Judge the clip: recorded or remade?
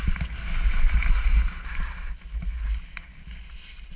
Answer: recorded